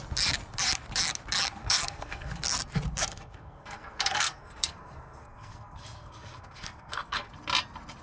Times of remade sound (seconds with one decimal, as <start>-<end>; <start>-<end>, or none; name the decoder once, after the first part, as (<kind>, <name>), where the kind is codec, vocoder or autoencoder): 1.6-2.3 (codec, SNAC); 3.1-7.3

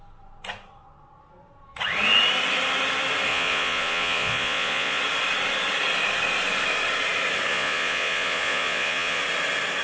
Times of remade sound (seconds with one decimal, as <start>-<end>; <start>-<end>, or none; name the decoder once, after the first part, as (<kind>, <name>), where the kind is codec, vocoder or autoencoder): 3.3-5.0 (vocoder, Vocos); 7.5-9.2